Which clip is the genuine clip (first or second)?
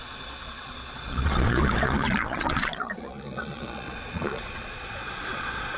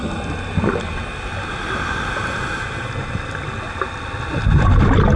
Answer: second